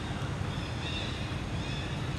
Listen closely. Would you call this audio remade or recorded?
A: recorded